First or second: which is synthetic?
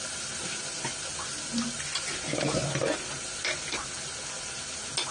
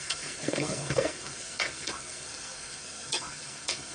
second